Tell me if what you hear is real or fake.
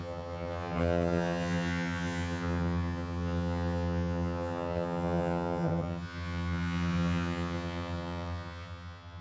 fake